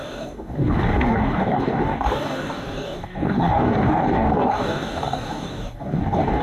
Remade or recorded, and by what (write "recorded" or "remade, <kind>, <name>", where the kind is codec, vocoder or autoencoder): remade, codec, DAC